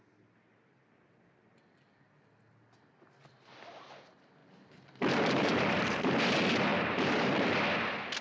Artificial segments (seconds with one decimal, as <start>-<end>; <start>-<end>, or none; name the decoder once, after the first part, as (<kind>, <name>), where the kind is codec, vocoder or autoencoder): 4.4-6.2 (vocoder, BigVGAN v2); 6.7-7.5